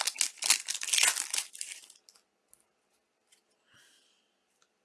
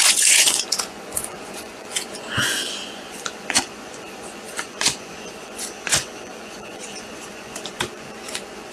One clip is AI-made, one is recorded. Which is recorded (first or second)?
first